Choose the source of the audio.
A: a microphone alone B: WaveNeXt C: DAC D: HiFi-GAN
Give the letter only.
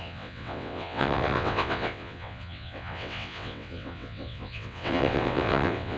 B